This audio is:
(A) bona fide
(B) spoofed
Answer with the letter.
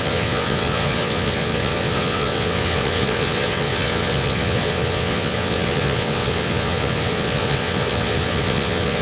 B